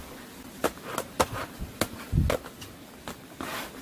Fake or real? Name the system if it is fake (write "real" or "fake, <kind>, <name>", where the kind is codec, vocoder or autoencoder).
real